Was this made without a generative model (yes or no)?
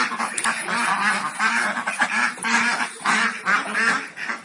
yes